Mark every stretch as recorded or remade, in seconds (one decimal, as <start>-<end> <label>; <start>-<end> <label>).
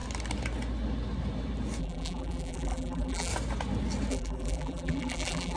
0.0-1.8 recorded; 1.8-3.3 remade; 3.3-4.1 recorded; 4.1-5.6 remade